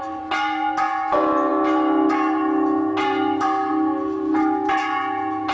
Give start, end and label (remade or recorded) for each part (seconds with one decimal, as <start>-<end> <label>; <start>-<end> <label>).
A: 0.0-5.5 recorded

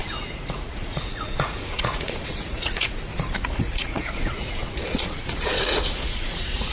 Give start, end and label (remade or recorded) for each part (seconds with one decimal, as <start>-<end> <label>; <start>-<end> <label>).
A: 0.0-6.7 remade

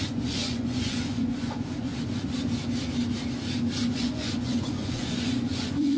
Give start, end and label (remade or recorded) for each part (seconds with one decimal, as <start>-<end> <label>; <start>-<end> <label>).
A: 0.0-1.9 remade; 1.9-3.9 recorded; 3.9-6.0 remade